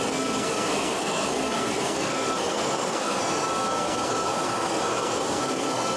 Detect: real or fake fake